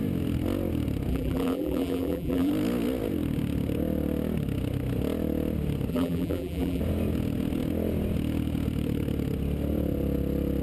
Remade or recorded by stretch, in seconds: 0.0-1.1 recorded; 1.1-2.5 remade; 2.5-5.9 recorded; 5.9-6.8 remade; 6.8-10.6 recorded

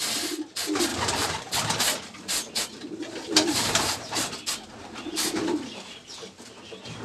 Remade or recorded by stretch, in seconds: 0.0-0.9 recorded; 0.9-5.1 remade; 5.1-7.0 recorded

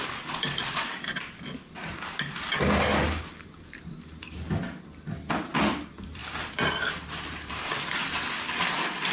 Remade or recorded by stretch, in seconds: 0.0-1.1 remade; 1.1-3.3 recorded; 3.3-9.1 remade

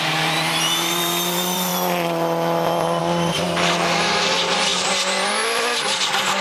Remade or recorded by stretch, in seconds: 0.0-1.7 remade; 1.7-3.0 recorded; 3.0-6.4 remade

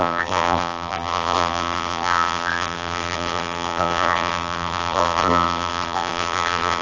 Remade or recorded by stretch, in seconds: 0.0-6.8 remade

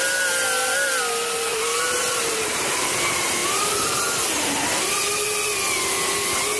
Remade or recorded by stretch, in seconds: 0.0-1.5 recorded; 1.5-2.8 remade; 2.8-6.6 recorded

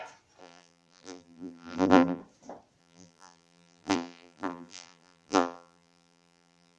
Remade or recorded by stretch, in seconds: 0.0-0.4 recorded; 0.4-2.2 remade; 2.2-2.8 recorded; 2.8-6.8 remade